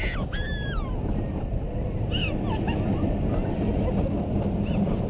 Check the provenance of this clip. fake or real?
real